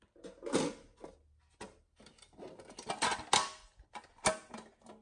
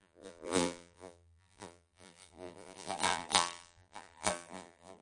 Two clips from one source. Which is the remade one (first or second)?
second